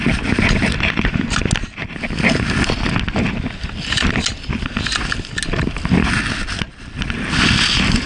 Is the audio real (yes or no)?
yes